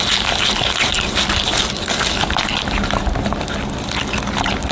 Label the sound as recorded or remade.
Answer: recorded